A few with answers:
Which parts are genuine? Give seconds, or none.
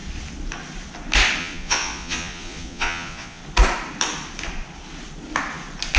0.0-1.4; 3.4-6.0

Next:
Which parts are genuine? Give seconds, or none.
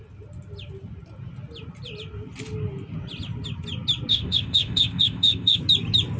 0.0-4.1; 5.6-6.2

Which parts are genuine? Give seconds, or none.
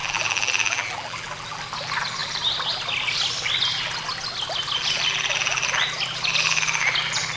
1.6-7.4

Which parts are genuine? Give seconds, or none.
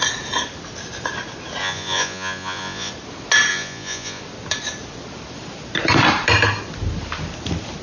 0.0-1.6; 2.9-3.5; 4.2-7.8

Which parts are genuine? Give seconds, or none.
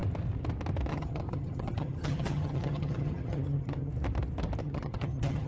0.0-0.9; 3.9-4.6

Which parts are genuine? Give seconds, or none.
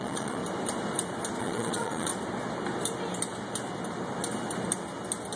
0.4-1.4; 2.1-5.4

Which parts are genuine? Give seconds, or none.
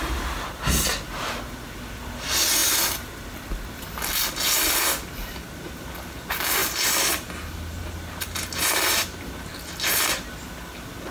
0.0-11.1